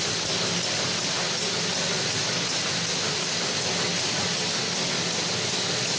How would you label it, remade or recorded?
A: recorded